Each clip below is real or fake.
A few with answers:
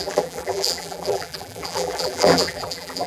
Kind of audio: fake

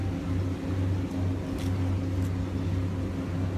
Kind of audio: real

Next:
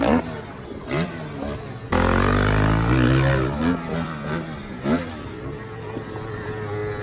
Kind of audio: real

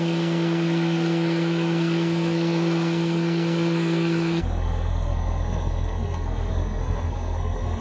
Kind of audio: fake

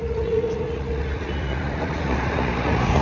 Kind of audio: fake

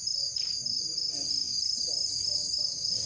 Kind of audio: real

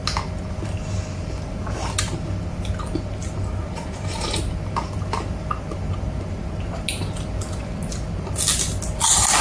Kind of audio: real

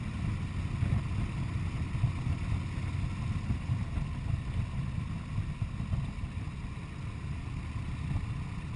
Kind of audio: real